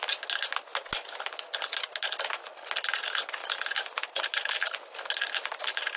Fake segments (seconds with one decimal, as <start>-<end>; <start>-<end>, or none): none